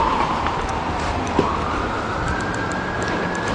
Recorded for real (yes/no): yes